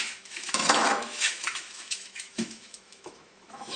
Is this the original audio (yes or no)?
no